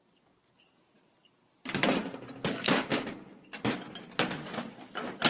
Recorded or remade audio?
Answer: recorded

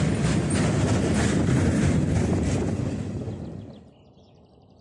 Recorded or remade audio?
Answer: recorded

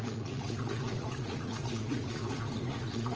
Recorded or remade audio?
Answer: remade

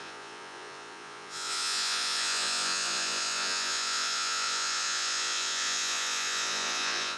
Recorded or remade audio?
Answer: remade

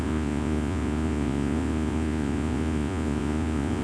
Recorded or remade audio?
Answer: remade